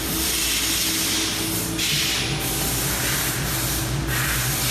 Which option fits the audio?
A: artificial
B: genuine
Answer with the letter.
B